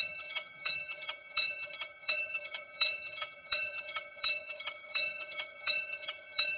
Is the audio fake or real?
fake